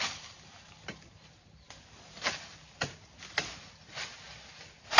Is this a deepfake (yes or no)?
no